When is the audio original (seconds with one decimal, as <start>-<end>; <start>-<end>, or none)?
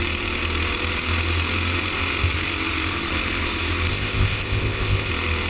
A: 0.0-3.9; 5.1-5.5